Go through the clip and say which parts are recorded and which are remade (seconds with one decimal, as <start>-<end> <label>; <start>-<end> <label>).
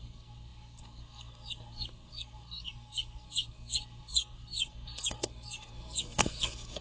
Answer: 0.0-6.8 remade